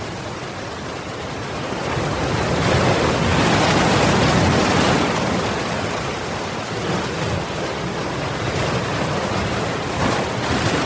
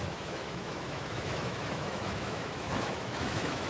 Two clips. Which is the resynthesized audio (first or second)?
second